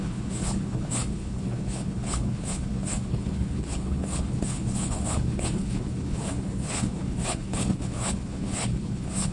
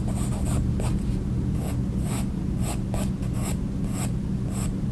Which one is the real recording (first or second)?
second